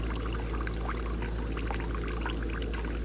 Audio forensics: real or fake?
real